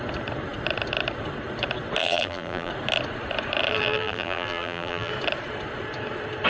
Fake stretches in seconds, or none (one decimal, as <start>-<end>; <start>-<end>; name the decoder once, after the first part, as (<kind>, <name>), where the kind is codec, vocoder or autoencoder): 2.0-2.7 (vocoder, BigVGAN v2); 3.7-5.1